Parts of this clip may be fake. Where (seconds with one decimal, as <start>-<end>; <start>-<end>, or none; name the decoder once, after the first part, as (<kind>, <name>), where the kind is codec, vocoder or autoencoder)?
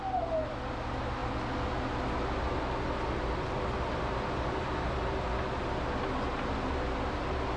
none